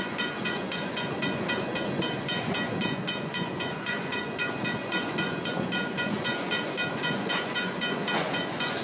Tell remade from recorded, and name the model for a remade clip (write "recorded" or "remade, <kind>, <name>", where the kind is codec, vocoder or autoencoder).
remade, vocoder, Vocos